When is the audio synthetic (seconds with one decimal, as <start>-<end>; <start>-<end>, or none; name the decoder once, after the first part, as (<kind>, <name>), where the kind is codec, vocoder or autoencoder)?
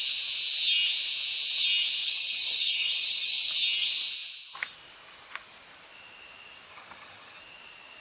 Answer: 2.0-3.5 (vocoder, HiFi-GAN); 6.7-7.4